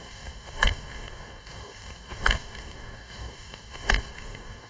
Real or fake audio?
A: fake